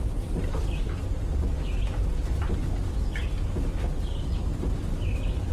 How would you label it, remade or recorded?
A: recorded